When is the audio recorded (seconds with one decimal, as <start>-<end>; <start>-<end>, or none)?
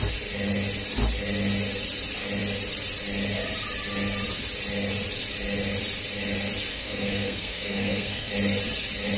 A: 0.0-6.7; 8.3-9.2